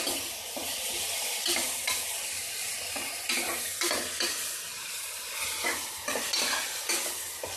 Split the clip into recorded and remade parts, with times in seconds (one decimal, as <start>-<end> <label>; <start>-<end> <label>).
0.0-0.6 recorded; 0.6-2.7 remade; 2.7-7.6 recorded